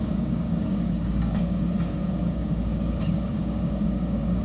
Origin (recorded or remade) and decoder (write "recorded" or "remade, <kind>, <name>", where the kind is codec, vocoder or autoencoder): remade, codec, DAC